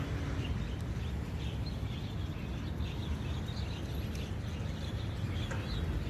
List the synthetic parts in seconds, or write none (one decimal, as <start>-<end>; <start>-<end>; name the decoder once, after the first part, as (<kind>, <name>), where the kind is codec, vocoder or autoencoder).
none